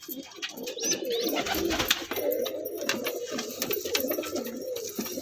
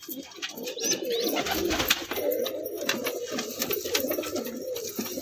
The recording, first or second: first